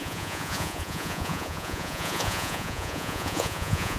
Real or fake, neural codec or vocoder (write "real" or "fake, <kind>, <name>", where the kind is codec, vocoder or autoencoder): fake, vocoder, Vocos